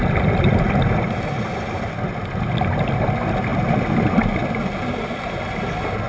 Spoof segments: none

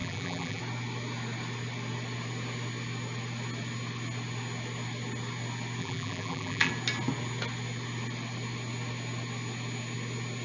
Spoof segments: 0.0-0.6; 5.8-6.7

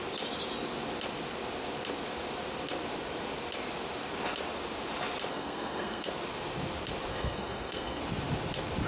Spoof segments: 5.3-6.1; 7.1-8.0

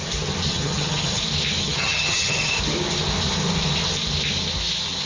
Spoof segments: 0.5-1.2; 1.6-2.5

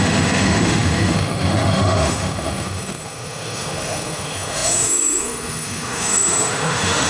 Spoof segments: 0.0-7.1

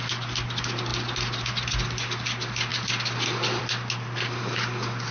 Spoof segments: none